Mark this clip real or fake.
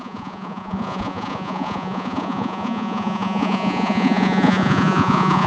fake